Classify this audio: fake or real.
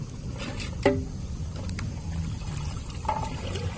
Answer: real